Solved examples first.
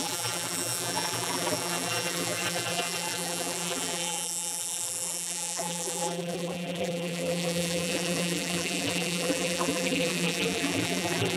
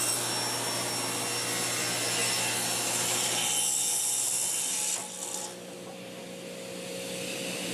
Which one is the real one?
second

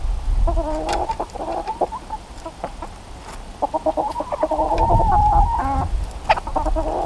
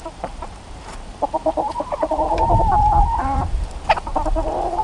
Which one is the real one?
first